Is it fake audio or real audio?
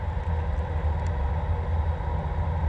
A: real